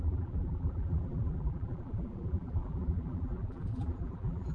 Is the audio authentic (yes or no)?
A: no